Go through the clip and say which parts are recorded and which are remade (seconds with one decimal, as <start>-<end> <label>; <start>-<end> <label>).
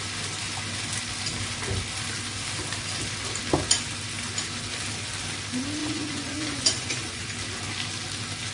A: 0.0-5.8 recorded; 5.8-7.2 remade; 7.2-8.5 recorded